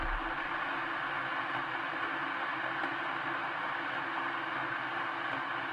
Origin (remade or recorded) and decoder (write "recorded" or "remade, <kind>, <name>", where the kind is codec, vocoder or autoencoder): recorded